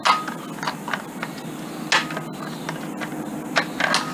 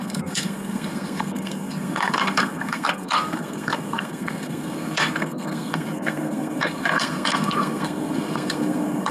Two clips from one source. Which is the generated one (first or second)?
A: second